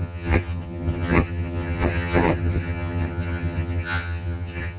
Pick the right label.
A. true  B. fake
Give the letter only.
B